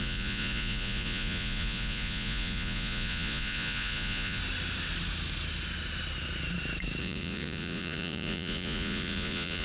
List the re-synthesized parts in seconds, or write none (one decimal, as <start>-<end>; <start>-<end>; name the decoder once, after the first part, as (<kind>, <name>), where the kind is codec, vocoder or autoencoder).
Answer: 0.0-4.4 (vocoder, Vocos); 7.0-9.6